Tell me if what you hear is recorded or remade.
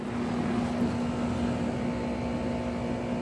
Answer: recorded